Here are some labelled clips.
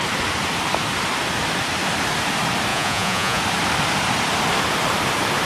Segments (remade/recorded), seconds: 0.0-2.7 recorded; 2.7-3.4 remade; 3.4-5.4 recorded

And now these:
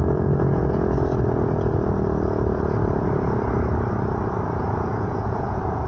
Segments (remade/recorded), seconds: 0.0-1.1 remade; 1.1-4.6 recorded; 4.6-5.9 remade

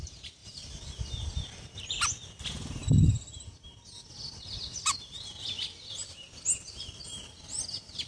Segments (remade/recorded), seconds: 0.0-8.1 recorded

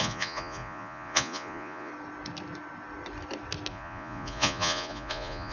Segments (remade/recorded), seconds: 0.0-1.9 remade; 1.9-3.7 recorded; 3.7-5.5 remade